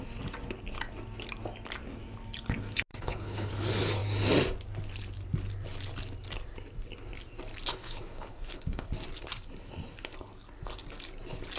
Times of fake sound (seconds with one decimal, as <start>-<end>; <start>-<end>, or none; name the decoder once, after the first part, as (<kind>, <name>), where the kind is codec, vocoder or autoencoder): 2.9-3.5 (codec, HILCodec); 7.7-8.9